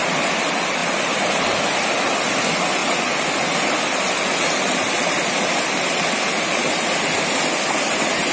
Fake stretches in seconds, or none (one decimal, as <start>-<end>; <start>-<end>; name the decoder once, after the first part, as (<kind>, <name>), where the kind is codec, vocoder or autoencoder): none